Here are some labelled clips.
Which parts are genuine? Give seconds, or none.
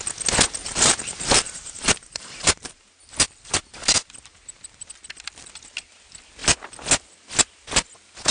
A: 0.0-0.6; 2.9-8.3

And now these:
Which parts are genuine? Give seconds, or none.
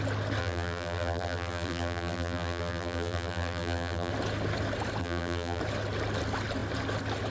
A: 0.0-0.4; 4.1-5.0; 5.6-7.3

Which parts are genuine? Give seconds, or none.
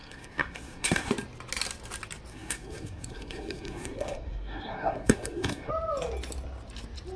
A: 1.1-2.3; 5.7-7.2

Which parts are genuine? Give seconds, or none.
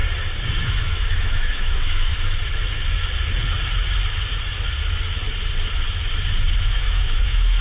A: 0.0-0.7; 2.1-6.6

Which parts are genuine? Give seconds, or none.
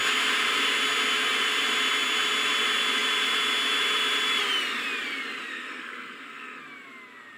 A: 0.0-5.5; 6.6-7.4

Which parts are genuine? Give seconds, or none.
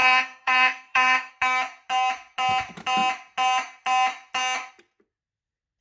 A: 1.3-5.8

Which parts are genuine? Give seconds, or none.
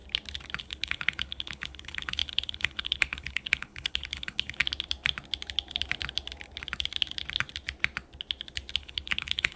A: 0.0-0.6; 4.6-8.8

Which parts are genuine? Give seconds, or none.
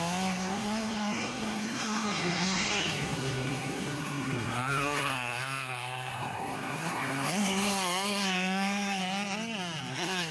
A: 9.0-9.9